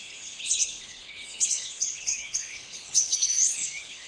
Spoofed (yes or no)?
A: yes